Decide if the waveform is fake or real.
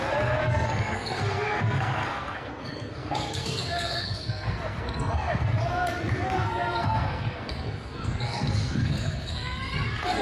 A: fake